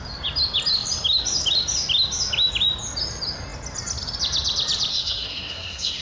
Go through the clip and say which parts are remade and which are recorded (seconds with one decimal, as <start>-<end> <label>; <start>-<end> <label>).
0.0-4.9 recorded; 4.9-6.0 remade